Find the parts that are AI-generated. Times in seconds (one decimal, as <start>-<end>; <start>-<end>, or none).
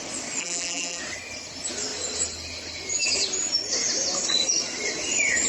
0.4-1.0